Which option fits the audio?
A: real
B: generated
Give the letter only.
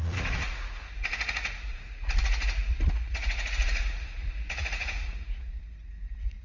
B